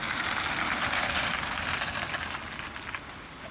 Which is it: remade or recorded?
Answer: recorded